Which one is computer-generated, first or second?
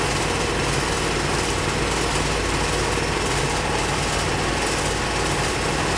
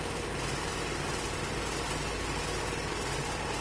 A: second